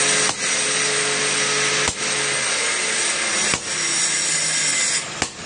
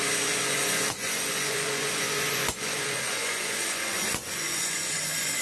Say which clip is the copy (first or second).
second